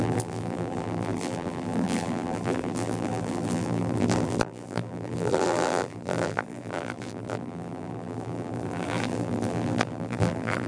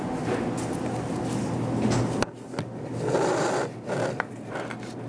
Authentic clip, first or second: second